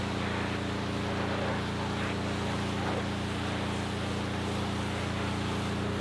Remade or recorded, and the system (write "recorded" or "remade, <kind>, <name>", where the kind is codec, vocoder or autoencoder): recorded